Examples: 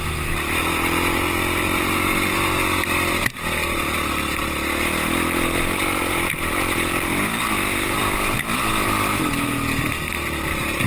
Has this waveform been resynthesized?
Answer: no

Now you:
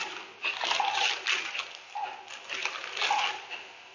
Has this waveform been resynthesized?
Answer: no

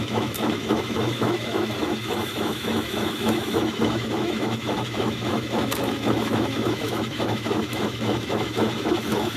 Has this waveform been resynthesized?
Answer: yes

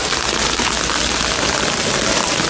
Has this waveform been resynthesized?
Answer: no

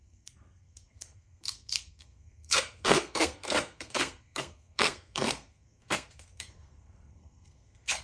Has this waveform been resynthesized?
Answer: yes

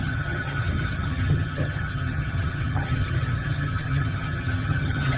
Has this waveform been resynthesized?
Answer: yes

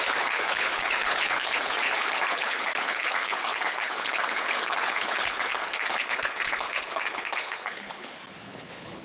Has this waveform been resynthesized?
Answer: yes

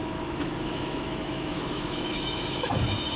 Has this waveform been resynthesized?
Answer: yes